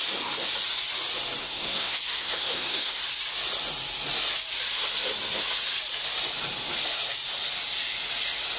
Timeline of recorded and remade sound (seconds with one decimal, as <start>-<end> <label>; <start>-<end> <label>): 0.0-1.4 recorded; 1.4-3.0 remade; 3.0-8.6 recorded